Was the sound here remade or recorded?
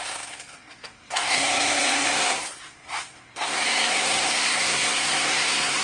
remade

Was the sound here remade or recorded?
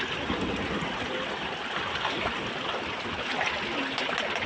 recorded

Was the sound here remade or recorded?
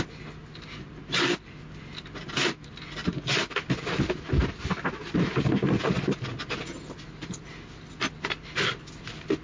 recorded